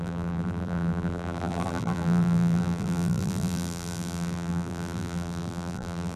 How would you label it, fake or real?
fake